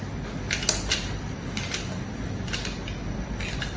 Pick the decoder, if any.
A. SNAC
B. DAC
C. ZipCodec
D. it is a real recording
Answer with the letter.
D